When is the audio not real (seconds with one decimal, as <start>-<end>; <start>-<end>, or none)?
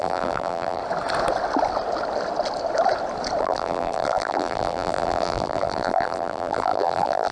0.0-0.8; 3.4-7.3